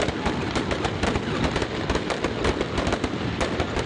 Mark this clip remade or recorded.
recorded